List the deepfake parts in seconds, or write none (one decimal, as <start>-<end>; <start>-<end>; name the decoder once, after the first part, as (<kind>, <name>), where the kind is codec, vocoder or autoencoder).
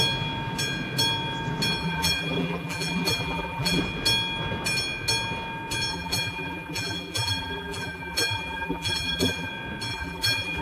1.8-3.8 (vocoder, BigVGAN v2); 5.9-9.5; 9.9-10.6